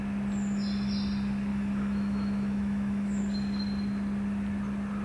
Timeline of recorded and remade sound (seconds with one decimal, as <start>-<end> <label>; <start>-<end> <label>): 0.0-1.5 recorded; 1.5-3.2 remade; 3.2-5.0 recorded